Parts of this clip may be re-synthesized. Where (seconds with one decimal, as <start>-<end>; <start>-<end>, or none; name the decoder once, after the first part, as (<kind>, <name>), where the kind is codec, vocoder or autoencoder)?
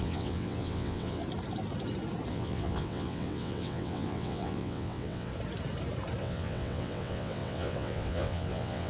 0.0-1.2 (vocoder, WaveNeXt); 2.3-5.3; 6.2-8.9